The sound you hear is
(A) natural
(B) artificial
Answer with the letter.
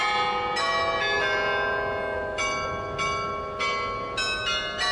A